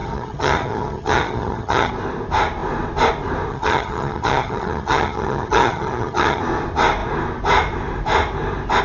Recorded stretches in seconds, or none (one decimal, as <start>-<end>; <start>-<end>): 1.9-3.5; 6.4-8.8